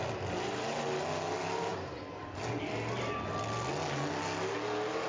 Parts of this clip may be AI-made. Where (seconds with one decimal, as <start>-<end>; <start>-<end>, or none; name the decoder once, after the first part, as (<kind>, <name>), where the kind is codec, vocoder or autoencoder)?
none

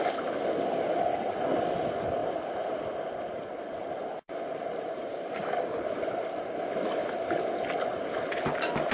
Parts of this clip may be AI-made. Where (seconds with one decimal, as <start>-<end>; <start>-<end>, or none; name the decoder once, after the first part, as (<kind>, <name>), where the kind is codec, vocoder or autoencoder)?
5.1-5.8 (codec, DAC)

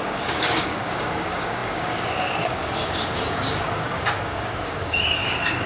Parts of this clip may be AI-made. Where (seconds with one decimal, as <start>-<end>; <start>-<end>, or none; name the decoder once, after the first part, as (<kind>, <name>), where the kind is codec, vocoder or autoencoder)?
0.0-5.7 (codec, DAC)

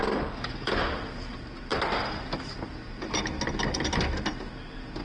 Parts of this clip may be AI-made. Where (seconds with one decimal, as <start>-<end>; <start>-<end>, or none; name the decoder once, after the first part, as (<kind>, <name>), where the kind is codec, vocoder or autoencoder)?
0.0-0.7 (codec, DAC)

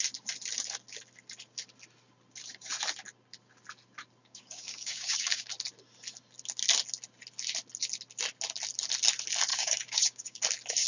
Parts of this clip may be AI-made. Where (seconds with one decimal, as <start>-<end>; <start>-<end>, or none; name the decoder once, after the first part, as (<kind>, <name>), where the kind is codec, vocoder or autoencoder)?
4.2-5.5 (codec, DAC); 9.5-10.4